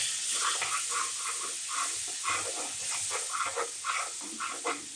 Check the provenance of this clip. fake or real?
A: real